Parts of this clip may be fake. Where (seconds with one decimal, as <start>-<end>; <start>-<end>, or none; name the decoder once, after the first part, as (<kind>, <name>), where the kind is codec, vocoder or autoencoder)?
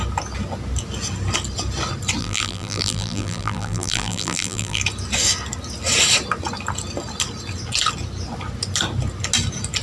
2.2-4.8 (vocoder, BigVGAN v2)